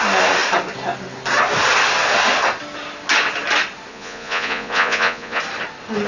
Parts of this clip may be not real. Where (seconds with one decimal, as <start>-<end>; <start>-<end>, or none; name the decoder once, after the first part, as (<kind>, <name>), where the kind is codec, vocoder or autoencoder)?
3.9-5.4 (vocoder, Vocos)